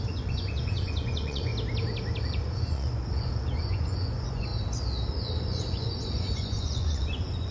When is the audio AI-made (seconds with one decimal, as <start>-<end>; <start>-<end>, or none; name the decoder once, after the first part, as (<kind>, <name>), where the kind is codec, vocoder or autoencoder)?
0.0-1.5 (vocoder, Vocos); 2.2-4.5; 5.1-7.5